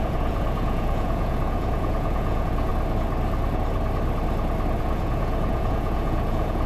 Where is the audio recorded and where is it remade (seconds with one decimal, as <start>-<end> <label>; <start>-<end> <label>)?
0.0-2.7 remade; 2.7-4.8 recorded; 4.8-6.7 remade